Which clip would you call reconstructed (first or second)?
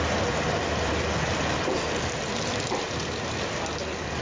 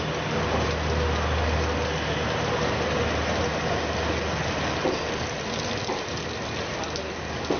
first